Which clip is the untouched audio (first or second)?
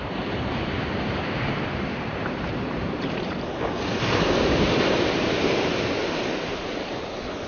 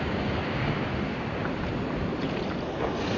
second